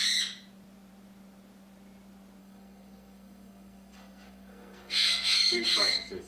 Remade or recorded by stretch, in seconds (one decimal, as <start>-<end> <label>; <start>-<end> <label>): 0.0-2.4 recorded; 2.4-6.3 remade